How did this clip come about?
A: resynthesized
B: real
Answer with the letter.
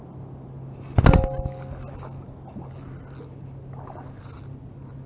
B